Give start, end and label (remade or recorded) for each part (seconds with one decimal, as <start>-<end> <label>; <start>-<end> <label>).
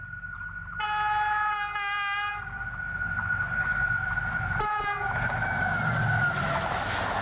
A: 0.0-7.2 recorded